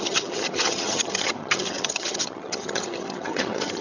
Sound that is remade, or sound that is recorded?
remade